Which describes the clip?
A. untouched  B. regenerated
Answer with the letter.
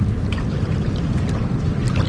A